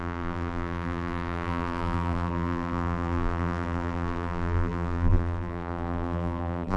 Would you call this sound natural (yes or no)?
no